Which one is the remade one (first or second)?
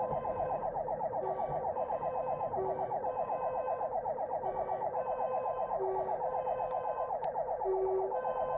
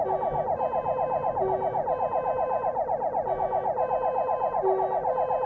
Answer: first